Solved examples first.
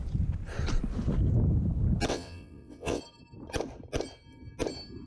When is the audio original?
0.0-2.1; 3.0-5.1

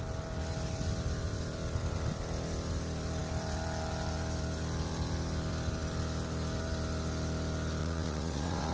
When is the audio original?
0.0-7.8

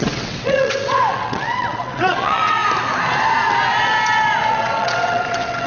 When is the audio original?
2.6-4.5

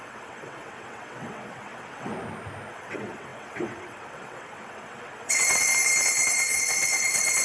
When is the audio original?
2.1-2.7; 5.7-6.6